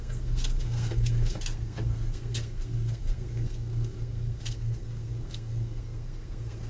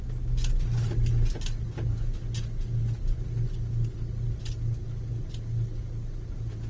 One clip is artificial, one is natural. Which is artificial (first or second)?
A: first